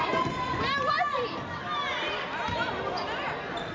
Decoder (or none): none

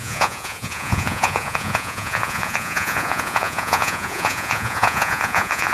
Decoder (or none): vocoder, Vocos